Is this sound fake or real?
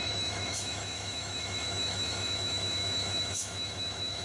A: fake